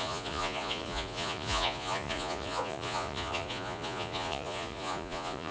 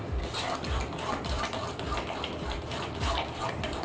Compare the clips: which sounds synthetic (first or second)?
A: first